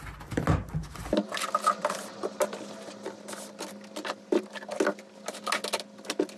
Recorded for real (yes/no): yes